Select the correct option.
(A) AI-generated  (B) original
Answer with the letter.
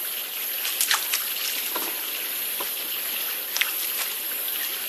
B